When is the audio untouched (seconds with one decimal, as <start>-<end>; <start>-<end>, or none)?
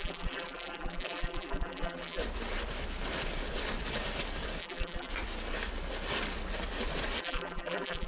2.2-4.6; 5.1-7.2